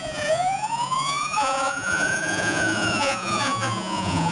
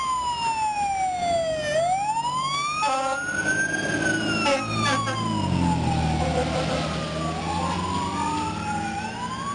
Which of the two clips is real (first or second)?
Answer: second